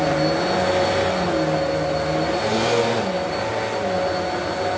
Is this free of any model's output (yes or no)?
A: yes